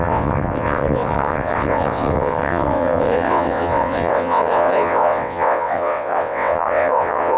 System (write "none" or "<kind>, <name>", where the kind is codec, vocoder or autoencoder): vocoder, WaveNeXt